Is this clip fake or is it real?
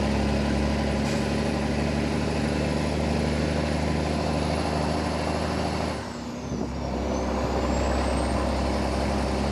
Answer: real